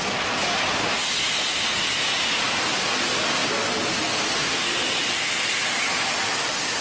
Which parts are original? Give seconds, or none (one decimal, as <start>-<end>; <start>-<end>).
0.0-6.8